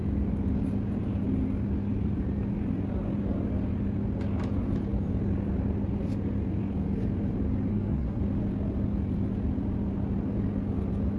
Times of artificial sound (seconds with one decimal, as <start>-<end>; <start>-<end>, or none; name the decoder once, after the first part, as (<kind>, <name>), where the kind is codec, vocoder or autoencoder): 7.7-8.2 (codec, SNAC)